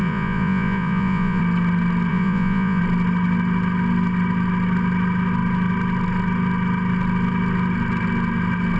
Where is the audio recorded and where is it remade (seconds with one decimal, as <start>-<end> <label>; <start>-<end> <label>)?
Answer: 0.0-1.4 remade; 1.4-2.1 recorded; 2.1-2.8 remade; 2.8-8.8 recorded